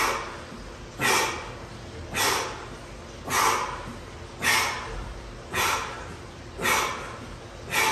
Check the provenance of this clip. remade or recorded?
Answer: recorded